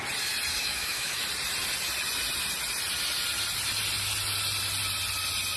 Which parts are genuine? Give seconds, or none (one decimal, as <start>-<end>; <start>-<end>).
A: 0.0-0.6; 1.2-5.6